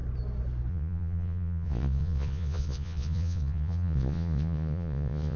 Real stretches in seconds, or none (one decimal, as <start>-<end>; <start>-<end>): 0.0-0.7